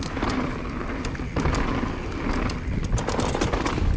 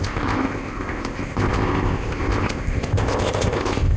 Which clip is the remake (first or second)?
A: second